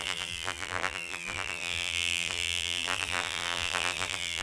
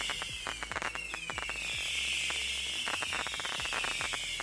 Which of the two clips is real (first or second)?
second